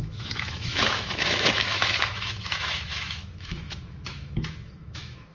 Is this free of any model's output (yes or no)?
no